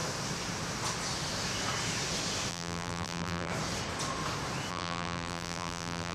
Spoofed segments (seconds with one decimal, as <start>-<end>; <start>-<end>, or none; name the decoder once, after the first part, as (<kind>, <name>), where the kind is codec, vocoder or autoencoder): 2.5-3.5 (vocoder, BigVGAN v2); 4.7-6.1

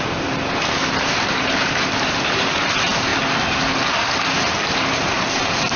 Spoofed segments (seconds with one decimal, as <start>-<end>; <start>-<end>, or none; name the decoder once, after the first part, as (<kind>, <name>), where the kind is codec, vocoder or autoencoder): 0.0-3.1 (vocoder, BigVGAN v2); 3.9-5.8

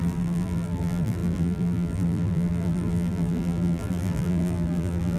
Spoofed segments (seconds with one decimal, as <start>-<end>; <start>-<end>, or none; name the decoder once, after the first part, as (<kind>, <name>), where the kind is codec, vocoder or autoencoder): 0.0-5.2 (vocoder, BigVGAN v2)

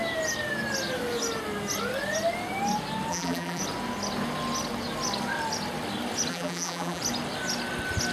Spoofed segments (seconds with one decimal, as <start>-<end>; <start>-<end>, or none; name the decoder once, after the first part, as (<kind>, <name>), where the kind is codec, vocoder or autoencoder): 3.1-3.6 (vocoder, BigVGAN v2); 6.3-7.0